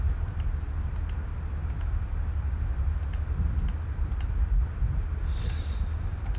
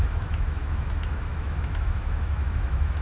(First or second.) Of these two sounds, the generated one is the second